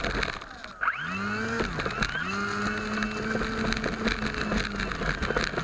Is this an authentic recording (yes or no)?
yes